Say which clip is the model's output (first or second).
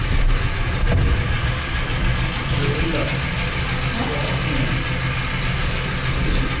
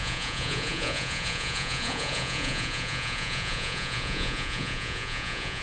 second